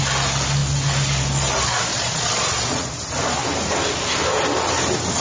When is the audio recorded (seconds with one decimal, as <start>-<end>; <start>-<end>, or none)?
0.0-1.9; 2.9-5.2